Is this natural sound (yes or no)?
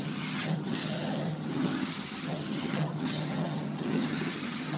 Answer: no